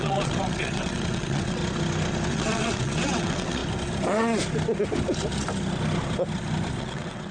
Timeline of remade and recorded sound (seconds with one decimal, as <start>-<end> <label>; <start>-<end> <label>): 0.0-1.6 remade; 1.6-2.3 recorded; 2.3-3.6 remade; 3.6-6.8 recorded; 6.8-7.3 remade